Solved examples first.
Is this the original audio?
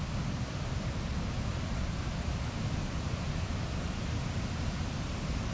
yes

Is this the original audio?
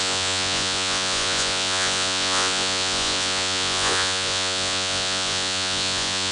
no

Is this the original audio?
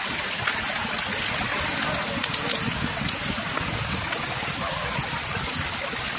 yes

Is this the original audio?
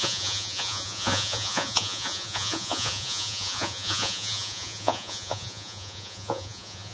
no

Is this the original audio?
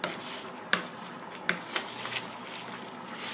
yes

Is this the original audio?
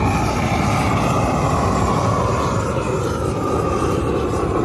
yes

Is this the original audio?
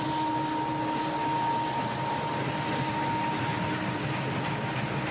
yes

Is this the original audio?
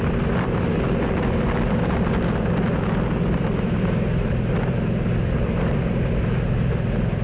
yes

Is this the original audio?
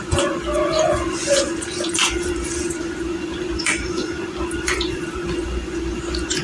no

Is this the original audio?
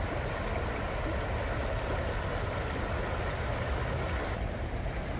yes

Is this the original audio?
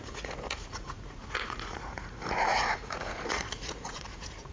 no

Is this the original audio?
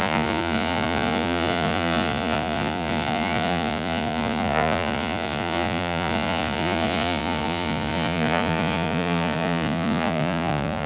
no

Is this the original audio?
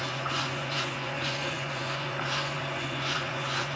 no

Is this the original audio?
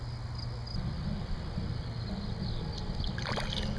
yes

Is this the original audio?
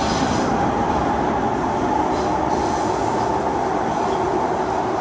yes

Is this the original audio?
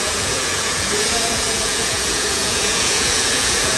no